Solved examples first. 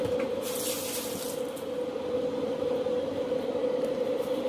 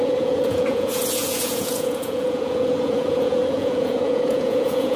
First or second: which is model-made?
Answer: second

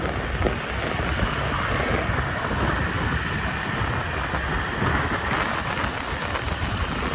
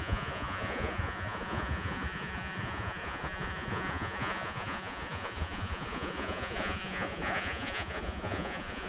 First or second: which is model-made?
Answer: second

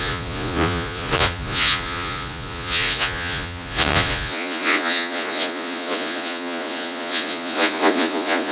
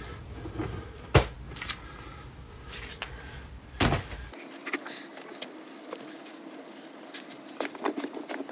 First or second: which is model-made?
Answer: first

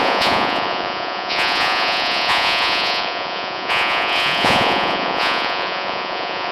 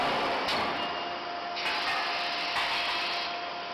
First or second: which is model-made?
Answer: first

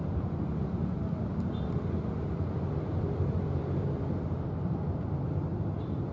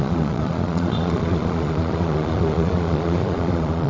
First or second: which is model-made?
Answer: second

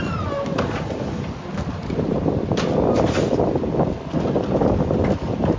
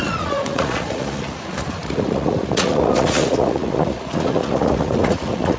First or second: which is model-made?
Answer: second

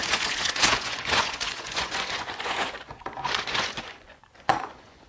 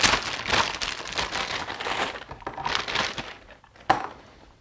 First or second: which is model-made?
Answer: first